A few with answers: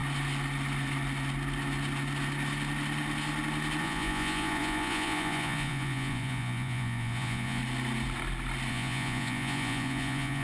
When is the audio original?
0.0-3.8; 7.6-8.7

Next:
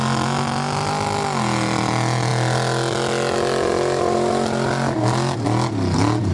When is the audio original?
0.0-6.3

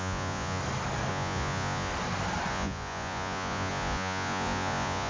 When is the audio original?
0.6-1.1; 1.9-2.5

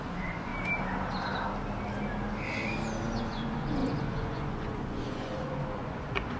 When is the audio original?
0.5-3.2

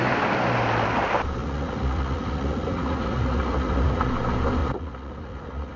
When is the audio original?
0.0-1.4; 4.1-4.6

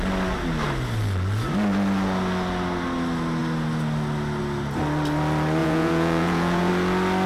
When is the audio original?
0.0-5.6; 6.7-7.3

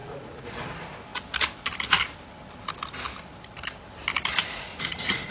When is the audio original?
0.5-4.7

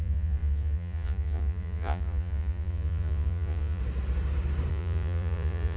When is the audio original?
3.8-4.7